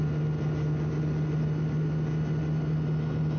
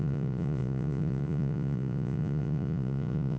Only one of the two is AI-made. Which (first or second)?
second